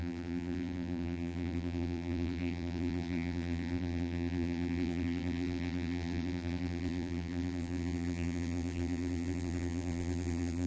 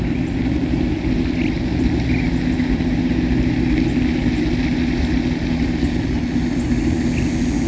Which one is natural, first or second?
second